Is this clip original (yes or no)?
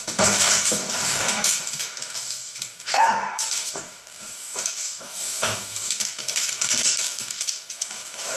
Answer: no